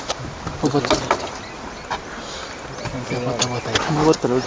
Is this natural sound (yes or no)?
yes